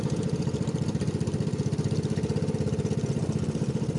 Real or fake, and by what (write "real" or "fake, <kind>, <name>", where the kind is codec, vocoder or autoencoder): fake, vocoder, BigVGAN v2